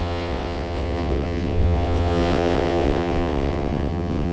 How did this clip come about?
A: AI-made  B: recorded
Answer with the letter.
A